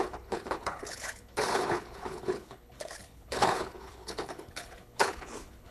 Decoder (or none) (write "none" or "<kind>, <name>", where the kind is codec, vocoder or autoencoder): codec, HILCodec